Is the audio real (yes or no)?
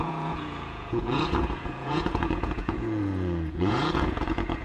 no